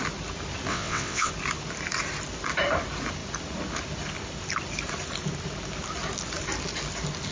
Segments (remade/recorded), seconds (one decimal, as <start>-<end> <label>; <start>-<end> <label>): 0.0-0.7 recorded; 0.7-1.3 remade; 1.3-7.3 recorded